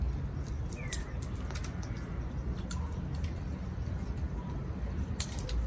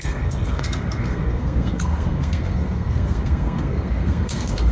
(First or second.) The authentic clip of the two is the first